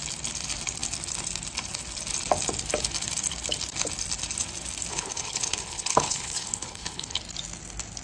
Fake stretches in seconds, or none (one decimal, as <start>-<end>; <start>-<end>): 4.9-7.2